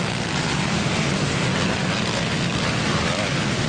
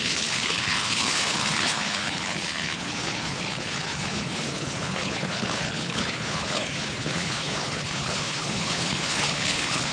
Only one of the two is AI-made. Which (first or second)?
second